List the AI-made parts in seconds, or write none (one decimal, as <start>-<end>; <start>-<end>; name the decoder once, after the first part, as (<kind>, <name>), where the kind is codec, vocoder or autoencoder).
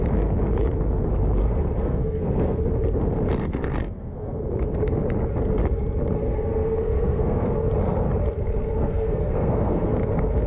1.4-2.6 (codec, SNAC); 3.4-4.4; 6.2-7.5; 8.8-10.0